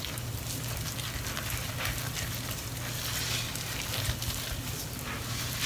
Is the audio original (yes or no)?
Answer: yes